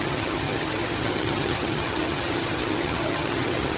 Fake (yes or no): yes